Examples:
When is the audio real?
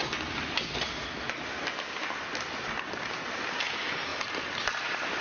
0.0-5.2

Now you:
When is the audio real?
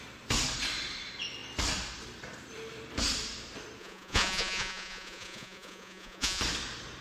0.0-3.8; 6.4-7.0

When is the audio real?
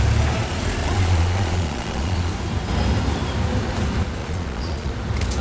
0.0-0.8; 2.3-4.2; 4.9-5.4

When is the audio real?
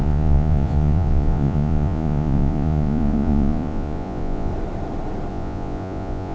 4.5-5.3